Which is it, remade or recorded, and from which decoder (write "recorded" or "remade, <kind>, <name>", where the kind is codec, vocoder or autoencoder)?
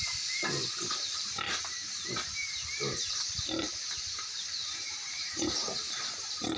remade, vocoder, BigVGAN v2